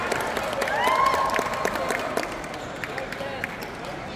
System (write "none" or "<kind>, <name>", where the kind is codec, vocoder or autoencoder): none